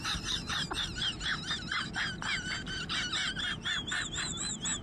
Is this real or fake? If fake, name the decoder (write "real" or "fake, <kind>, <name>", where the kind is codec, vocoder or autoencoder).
real